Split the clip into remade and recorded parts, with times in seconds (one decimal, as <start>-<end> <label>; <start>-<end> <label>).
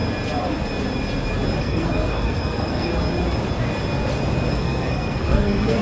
0.0-1.6 recorded; 1.6-2.9 remade; 2.9-4.5 recorded; 4.5-5.8 remade